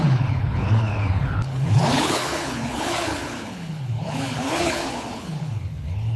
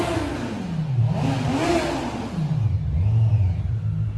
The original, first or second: second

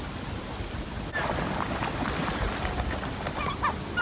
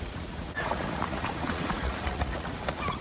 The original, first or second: first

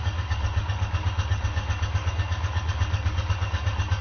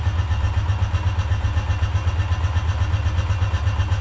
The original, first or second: second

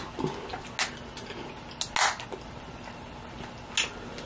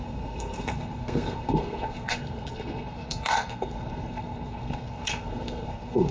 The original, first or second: first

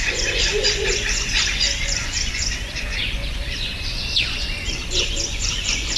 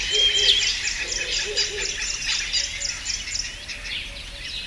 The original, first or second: second